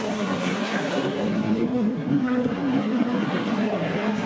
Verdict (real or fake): fake